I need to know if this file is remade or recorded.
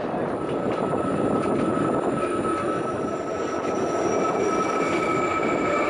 recorded